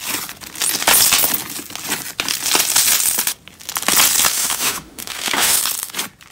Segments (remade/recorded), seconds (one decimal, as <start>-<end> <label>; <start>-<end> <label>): 0.0-4.3 recorded; 4.3-5.6 remade; 5.6-6.3 recorded

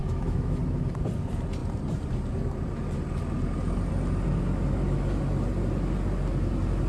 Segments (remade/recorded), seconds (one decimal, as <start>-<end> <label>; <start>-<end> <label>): 0.0-0.6 remade; 0.6-6.9 recorded

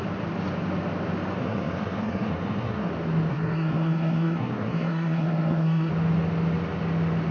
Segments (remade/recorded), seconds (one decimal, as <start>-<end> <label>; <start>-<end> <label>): 0.0-1.4 recorded; 1.4-2.9 remade; 2.9-3.3 recorded; 3.3-5.9 remade; 5.9-7.3 recorded

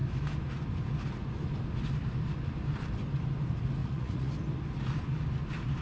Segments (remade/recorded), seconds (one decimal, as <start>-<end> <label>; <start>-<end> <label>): 0.0-3.8 recorded; 3.8-4.3 remade; 4.3-5.8 recorded